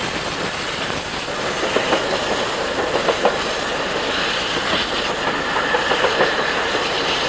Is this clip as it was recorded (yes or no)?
yes